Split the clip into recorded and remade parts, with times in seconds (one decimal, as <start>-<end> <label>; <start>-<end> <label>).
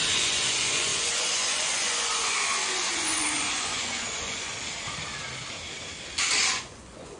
0.0-4.5 remade; 4.5-6.4 recorded; 6.4-7.2 remade